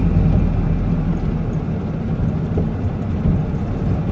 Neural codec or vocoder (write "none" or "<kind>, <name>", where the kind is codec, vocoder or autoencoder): none